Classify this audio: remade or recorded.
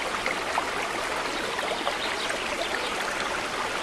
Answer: recorded